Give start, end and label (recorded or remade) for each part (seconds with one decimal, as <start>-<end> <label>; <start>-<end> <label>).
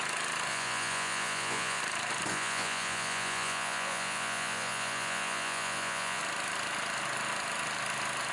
0.0-0.5 recorded; 0.5-1.8 remade; 1.8-2.3 recorded; 2.3-6.2 remade; 6.2-8.3 recorded